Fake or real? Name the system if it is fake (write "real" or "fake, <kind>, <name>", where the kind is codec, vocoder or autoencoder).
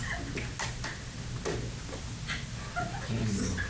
real